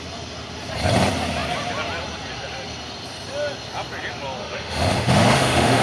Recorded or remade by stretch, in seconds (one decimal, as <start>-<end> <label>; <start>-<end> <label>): 0.0-4.4 recorded; 4.4-5.8 remade

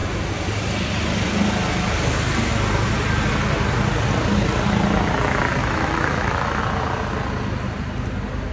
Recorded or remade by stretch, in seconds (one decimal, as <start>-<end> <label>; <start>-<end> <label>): 0.0-5.6 recorded; 5.6-6.6 remade; 6.6-8.5 recorded

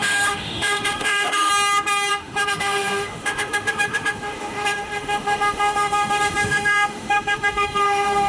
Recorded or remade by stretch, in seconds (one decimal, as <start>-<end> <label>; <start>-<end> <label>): 0.0-1.5 remade; 1.5-2.1 recorded; 2.1-8.3 remade

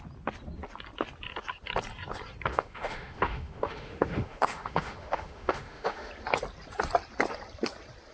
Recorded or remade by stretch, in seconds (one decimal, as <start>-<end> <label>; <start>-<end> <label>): 0.0-2.5 recorded; 2.5-6.1 remade; 6.1-8.1 recorded

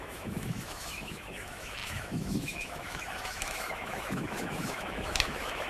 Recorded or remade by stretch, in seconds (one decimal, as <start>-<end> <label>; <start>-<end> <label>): 0.0-5.7 remade

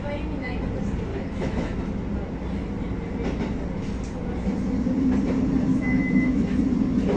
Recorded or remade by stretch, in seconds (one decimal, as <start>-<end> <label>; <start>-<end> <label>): 0.0-1.1 recorded; 1.1-1.8 remade; 1.8-5.7 recorded; 5.7-6.6 remade; 6.6-7.2 recorded